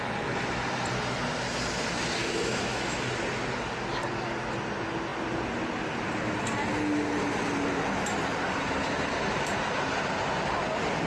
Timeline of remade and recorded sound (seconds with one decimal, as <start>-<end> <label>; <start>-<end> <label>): 0.0-2.2 recorded; 2.2-3.0 remade; 3.0-11.1 recorded